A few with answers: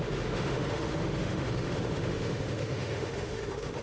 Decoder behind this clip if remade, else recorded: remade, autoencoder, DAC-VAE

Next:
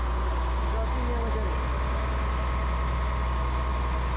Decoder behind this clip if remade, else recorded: recorded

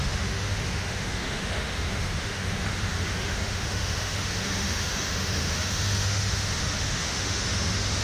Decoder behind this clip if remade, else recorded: remade, autoencoder, DAC-VAE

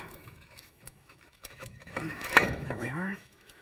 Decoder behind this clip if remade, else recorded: remade, autoencoder, DAC-VAE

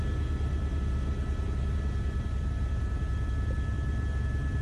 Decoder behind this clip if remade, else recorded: recorded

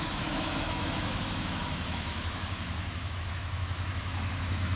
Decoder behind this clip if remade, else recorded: remade, autoencoder, DAC-VAE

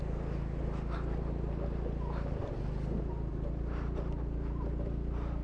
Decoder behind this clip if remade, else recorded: recorded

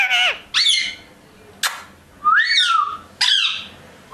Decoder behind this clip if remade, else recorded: recorded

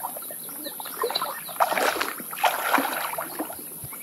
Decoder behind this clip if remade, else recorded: recorded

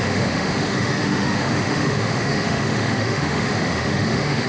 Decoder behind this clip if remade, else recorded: remade, autoencoder, DAC-VAE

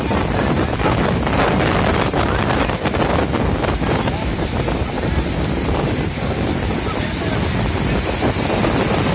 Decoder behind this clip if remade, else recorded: recorded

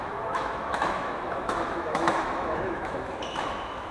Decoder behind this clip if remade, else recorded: remade, autoencoder, DAC-VAE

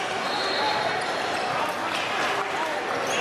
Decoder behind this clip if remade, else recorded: recorded